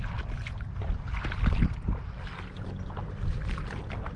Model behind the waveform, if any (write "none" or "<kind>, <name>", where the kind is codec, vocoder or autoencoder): none